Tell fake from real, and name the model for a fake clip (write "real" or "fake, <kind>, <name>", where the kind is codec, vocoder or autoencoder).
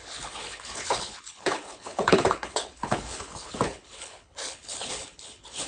fake, codec, HILCodec